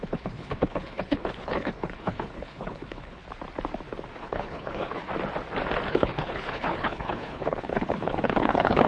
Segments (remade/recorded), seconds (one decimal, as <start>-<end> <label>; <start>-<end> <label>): 0.0-3.2 remade; 3.2-4.2 recorded; 4.2-5.1 remade; 5.1-5.9 recorded; 5.9-8.9 remade